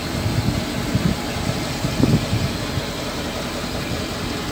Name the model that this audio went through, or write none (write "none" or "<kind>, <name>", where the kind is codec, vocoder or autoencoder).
none